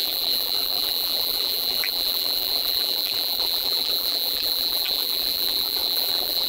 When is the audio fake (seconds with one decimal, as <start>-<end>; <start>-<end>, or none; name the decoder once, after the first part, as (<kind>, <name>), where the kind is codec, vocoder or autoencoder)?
0.0-6.5 (vocoder, BigVGAN v2)